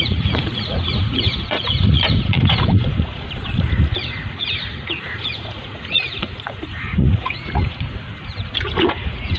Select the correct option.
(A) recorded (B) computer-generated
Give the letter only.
B